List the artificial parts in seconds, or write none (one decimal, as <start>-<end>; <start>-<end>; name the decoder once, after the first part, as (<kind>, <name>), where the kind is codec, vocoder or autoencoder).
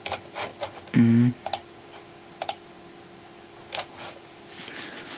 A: none